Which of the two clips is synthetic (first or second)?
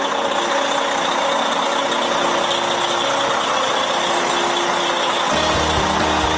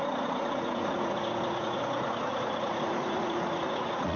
second